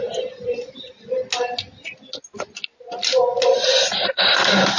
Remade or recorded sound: recorded